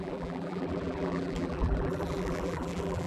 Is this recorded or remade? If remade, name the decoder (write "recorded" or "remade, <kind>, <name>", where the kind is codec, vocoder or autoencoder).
remade, vocoder, BigVGAN v2